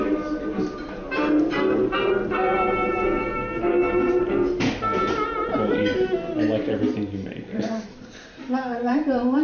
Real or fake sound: fake